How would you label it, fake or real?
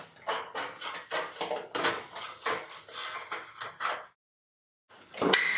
real